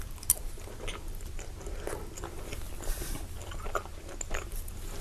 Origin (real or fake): real